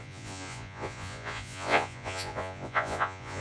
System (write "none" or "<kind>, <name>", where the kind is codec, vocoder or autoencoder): vocoder, Vocos